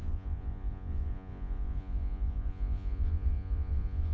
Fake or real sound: fake